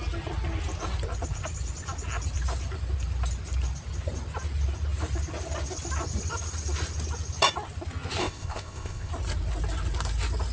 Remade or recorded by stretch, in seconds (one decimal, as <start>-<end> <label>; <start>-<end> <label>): 0.0-8.2 recorded; 8.2-9.1 remade; 9.1-10.5 recorded